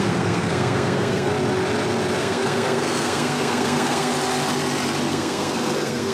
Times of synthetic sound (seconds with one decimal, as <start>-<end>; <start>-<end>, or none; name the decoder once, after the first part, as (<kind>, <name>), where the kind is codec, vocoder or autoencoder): 0.0-1.3 (codec, SNAC); 2.2-4.1; 5.1-6.1